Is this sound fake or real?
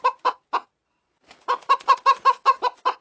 real